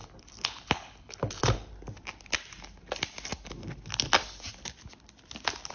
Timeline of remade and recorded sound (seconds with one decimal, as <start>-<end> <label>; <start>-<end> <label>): 0.0-1.7 remade; 1.7-5.7 recorded